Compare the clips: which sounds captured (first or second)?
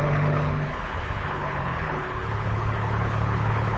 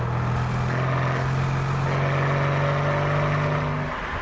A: second